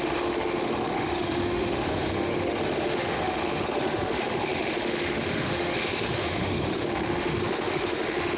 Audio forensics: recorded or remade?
remade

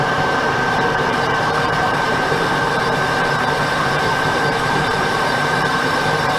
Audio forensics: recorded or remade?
remade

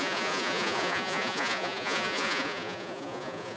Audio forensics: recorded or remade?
remade